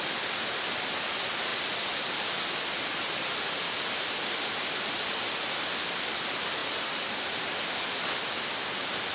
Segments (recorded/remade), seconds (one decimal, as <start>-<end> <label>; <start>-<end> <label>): 0.0-9.1 recorded